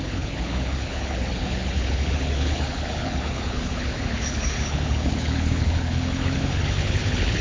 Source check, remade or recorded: remade